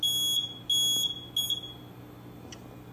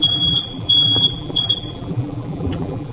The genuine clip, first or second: first